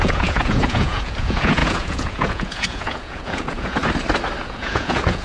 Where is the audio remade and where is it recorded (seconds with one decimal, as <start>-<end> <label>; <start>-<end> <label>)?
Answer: 0.0-3.8 remade; 3.8-4.4 recorded; 4.4-5.2 remade